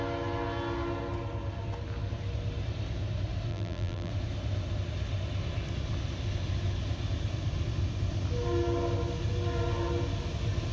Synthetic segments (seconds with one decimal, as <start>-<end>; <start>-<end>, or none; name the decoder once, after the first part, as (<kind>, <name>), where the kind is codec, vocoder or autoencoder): 3.5-4.1 (vocoder, BigVGAN v2)